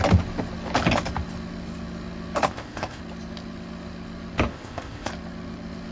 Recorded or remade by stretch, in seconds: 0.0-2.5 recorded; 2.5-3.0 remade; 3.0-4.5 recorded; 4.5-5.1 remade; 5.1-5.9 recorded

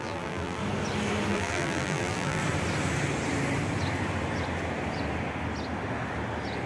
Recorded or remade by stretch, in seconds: 0.0-0.6 remade; 0.6-1.3 recorded; 1.3-2.4 remade; 2.4-6.7 recorded

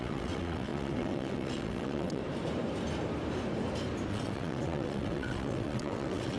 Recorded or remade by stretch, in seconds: 0.0-2.2 remade; 2.2-4.1 recorded; 4.1-6.4 remade

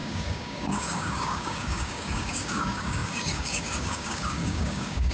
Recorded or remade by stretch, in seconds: 0.0-5.1 remade

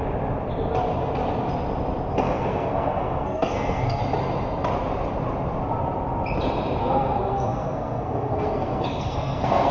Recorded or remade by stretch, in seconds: 0.0-2.1 recorded; 2.1-4.0 remade; 4.0-6.8 recorded; 6.8-9.7 remade

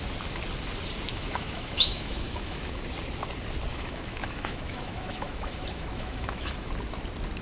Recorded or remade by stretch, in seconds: 0.0-1.1 recorded; 1.1-2.8 remade; 2.8-3.7 recorded; 3.7-6.7 remade; 6.7-7.4 recorded

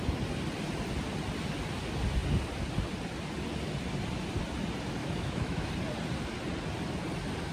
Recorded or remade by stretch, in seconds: 0.0-5.0 recorded; 5.0-5.7 remade; 5.7-7.5 recorded